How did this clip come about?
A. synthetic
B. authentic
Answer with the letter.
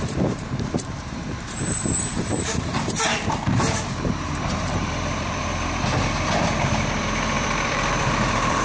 A